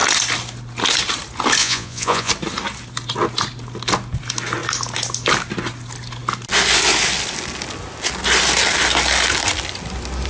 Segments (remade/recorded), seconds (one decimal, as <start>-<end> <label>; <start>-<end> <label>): 0.0-1.6 recorded; 1.6-2.3 remade; 2.3-10.3 recorded

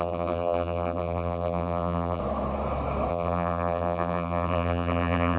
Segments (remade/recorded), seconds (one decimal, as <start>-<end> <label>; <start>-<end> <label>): 0.0-2.2 remade; 2.2-3.1 recorded; 3.1-5.4 remade

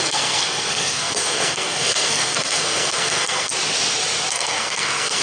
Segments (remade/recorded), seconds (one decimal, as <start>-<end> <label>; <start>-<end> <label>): 0.0-3.5 remade; 3.5-4.3 recorded; 4.3-5.2 remade

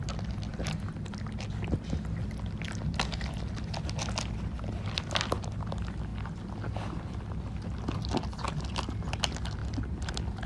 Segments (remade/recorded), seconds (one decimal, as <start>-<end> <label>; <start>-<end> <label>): 0.0-10.5 recorded

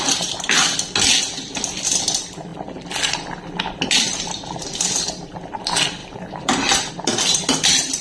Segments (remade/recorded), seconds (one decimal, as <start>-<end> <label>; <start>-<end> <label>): 0.0-6.0 recorded; 6.0-6.9 remade; 6.9-8.0 recorded

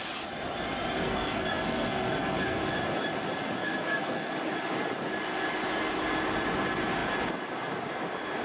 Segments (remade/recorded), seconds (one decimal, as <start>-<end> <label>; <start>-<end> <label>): 0.0-1.0 recorded; 1.0-2.6 remade; 2.6-3.6 recorded; 3.6-4.3 remade; 4.3-8.4 recorded